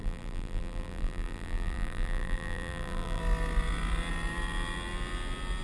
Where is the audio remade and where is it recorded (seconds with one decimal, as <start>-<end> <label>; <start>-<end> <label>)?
0.0-3.2 remade; 3.2-5.6 recorded

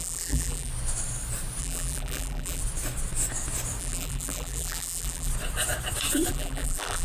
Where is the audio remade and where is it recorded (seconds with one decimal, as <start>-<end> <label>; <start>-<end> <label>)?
0.0-0.7 remade; 0.7-1.6 recorded; 1.6-2.6 remade; 2.6-3.8 recorded; 3.8-5.3 remade; 5.3-6.3 recorded; 6.3-7.0 remade

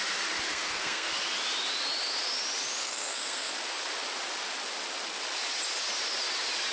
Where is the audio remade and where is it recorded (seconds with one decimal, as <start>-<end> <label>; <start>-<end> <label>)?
0.0-0.5 recorded; 0.5-1.1 remade; 1.1-2.8 recorded; 2.8-3.5 remade; 3.5-6.7 recorded